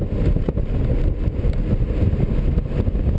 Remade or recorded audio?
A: recorded